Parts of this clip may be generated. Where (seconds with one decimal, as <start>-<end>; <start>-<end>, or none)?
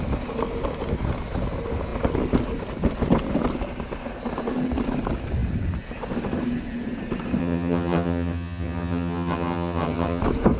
7.4-10.2